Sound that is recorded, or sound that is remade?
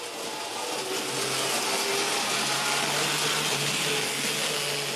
recorded